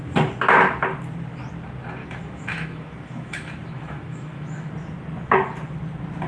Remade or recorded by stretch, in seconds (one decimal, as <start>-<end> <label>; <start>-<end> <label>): 0.0-2.0 recorded; 2.0-4.7 remade; 4.7-6.3 recorded